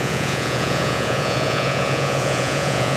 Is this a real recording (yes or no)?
no